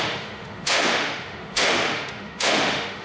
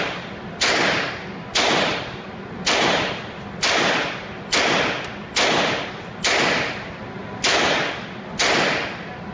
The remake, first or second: first